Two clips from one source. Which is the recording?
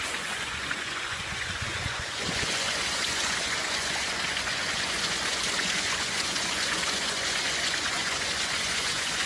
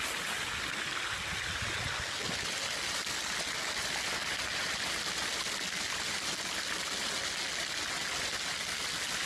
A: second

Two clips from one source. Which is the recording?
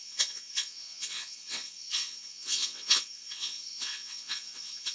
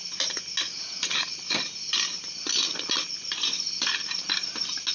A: second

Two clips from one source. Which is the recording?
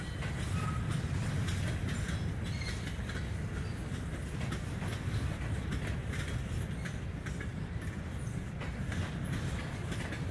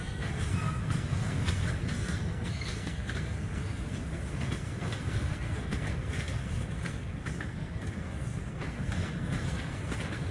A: first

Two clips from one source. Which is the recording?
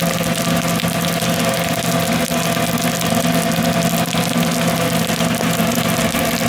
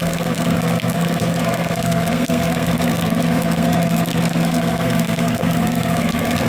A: first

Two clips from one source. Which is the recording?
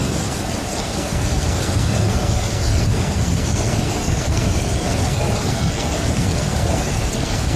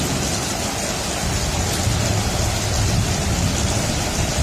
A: second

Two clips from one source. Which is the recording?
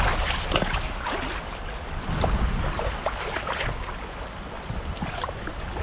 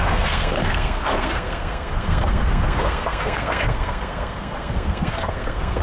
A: first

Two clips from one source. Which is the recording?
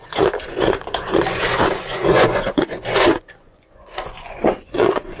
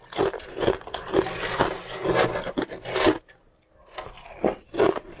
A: second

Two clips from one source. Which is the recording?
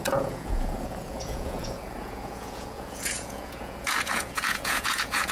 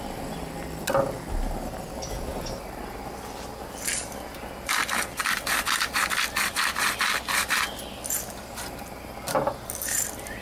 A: second